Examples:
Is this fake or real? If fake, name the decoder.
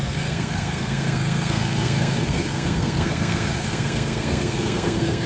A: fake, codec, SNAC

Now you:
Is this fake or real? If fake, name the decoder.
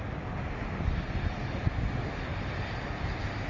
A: real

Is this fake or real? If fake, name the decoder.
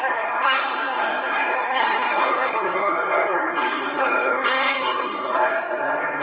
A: fake, codec, SNAC